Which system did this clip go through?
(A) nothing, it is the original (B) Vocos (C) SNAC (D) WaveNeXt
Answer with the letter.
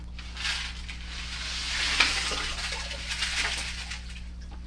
A